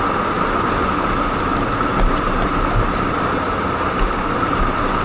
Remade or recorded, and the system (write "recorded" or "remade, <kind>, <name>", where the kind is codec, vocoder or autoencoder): recorded